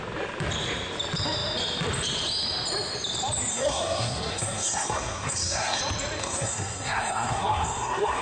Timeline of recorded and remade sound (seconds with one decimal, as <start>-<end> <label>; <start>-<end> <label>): 0.0-3.5 recorded; 3.5-5.8 remade; 5.8-6.2 recorded; 6.2-8.2 remade